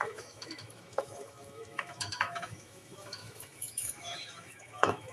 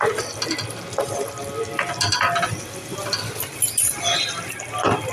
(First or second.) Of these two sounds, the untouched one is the second